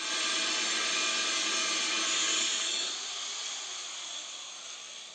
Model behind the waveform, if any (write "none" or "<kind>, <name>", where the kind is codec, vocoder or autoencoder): none